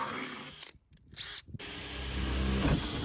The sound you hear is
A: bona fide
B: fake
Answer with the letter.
A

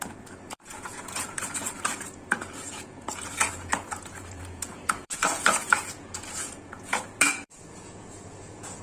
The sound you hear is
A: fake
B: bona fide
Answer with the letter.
A